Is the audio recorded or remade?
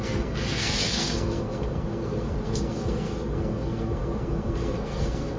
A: remade